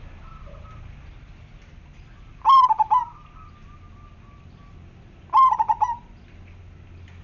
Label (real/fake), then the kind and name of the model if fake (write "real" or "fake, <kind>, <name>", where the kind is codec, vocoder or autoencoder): real